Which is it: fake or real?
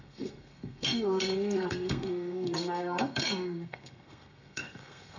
fake